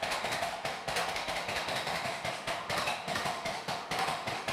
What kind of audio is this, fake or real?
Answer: fake